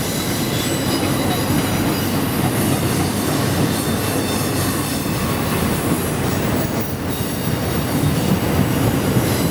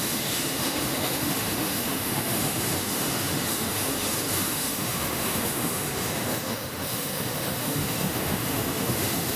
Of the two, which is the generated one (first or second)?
second